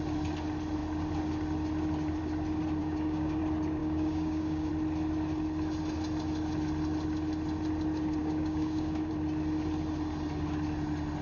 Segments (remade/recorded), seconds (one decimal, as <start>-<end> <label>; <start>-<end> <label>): 0.0-2.8 recorded; 2.8-3.4 remade; 3.4-3.8 recorded; 3.8-4.7 remade; 4.7-8.2 recorded; 8.2-9.1 remade; 9.1-11.2 recorded